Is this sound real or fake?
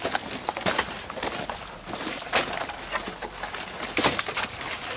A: real